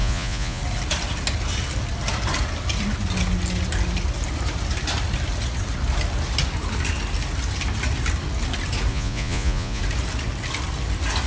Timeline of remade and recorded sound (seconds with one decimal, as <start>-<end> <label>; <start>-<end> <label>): 0.0-0.6 remade; 0.6-8.9 recorded; 8.9-9.8 remade; 9.8-11.3 recorded